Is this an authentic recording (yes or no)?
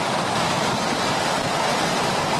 yes